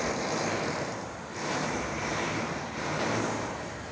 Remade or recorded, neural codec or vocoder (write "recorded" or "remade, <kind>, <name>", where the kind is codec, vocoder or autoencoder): remade, vocoder, BigVGAN v2